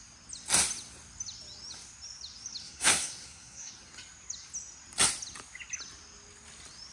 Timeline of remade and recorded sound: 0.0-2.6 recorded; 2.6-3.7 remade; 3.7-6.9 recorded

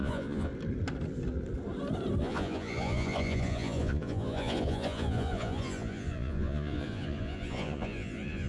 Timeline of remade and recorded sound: 0.0-0.5 remade; 0.5-2.2 recorded; 2.2-8.5 remade

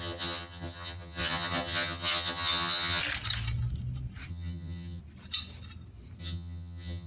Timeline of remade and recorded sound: 0.0-3.0 remade; 3.0-4.3 recorded; 4.3-5.0 remade; 5.0-6.2 recorded; 6.2-7.1 remade

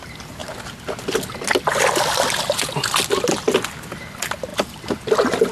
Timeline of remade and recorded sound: 0.0-5.5 recorded

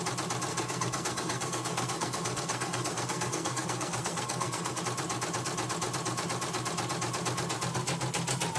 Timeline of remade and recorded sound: 0.0-0.5 recorded; 0.5-4.8 remade; 4.8-8.6 recorded